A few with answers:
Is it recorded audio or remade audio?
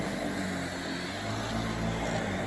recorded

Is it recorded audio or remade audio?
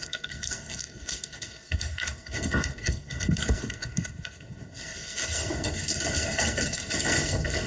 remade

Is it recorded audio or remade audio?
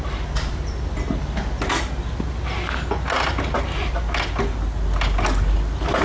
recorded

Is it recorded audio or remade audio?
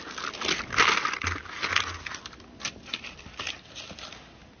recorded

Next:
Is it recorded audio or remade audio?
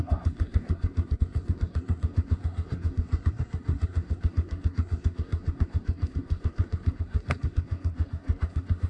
remade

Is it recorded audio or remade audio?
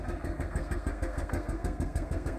remade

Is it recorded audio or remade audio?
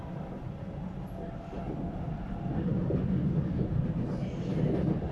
recorded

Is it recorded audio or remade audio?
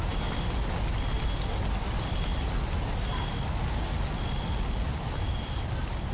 recorded